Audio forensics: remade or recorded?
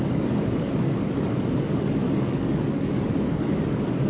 remade